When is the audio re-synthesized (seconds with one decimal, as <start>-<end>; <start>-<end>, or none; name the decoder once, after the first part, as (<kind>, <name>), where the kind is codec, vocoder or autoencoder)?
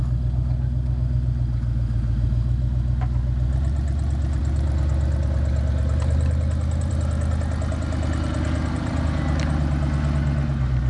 none